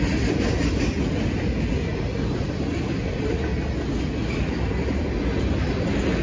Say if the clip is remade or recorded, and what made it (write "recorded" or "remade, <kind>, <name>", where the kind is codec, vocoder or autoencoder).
recorded